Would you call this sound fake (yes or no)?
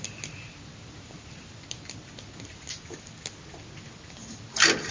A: no